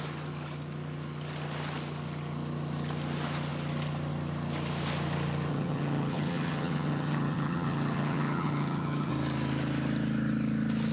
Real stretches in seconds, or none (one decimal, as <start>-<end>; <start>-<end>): 0.0-5.5; 9.1-10.9